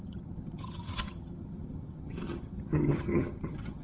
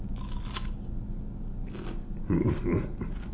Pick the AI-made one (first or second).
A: first